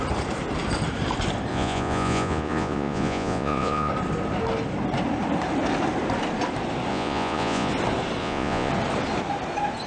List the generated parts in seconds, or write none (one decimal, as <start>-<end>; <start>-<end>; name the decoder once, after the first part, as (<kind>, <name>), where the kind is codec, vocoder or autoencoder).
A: 1.5-3.9 (vocoder, Vocos); 6.9-7.7; 8.2-8.7